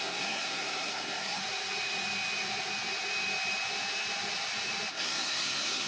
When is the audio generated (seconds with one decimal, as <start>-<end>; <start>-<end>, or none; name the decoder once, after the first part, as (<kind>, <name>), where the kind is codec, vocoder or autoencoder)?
0.0-1.4 (codec, SNAC); 4.9-5.9